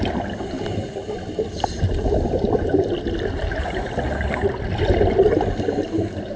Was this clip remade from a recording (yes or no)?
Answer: no